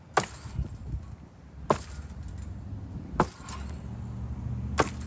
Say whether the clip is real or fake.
real